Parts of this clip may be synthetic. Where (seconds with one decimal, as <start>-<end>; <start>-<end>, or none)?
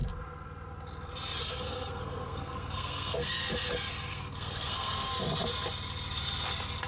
1.4-3.4; 4.1-5.1